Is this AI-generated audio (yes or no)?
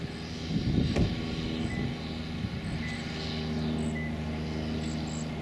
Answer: no